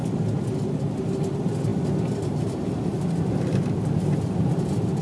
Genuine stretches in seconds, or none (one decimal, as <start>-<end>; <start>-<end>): 0.0-5.0